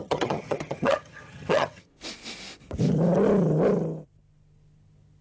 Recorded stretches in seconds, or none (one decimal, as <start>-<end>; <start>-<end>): 1.9-5.2